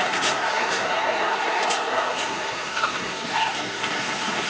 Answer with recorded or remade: remade